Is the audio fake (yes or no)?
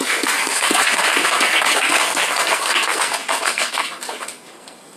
yes